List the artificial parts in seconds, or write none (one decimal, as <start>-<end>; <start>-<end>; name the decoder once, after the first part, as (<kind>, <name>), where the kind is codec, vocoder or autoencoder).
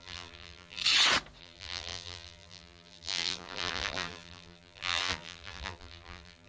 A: 0.0-0.8 (vocoder, BigVGAN v2); 1.4-6.5